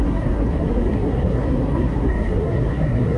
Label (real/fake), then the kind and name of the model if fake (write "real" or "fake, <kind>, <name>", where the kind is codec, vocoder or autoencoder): fake, codec, SNAC